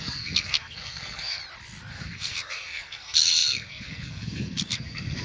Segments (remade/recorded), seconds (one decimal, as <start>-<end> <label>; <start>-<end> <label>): 0.0-1.4 remade; 1.4-1.9 recorded; 1.9-5.2 remade